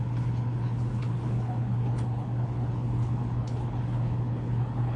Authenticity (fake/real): fake